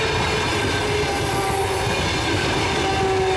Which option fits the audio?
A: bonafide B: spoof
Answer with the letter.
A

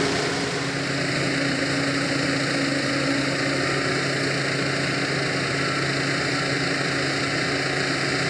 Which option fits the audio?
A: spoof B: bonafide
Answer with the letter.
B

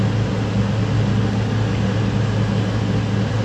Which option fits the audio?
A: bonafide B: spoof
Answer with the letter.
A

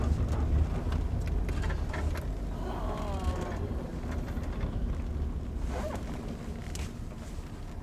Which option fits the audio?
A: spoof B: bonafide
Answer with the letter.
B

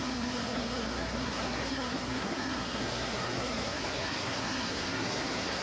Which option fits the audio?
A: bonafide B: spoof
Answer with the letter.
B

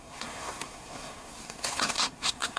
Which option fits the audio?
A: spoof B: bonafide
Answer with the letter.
A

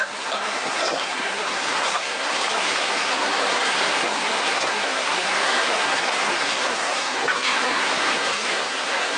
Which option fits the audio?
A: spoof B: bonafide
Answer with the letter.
A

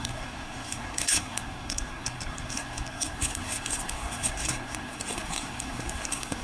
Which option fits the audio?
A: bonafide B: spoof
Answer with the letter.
B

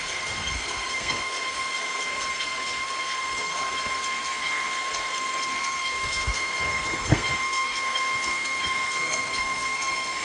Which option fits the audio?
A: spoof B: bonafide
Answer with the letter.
A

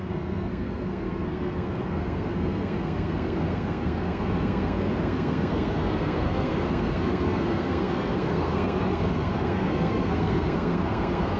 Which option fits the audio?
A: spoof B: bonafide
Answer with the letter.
A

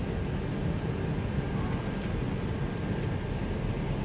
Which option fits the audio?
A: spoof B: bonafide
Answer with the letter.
B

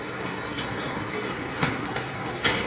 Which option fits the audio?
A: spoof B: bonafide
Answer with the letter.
A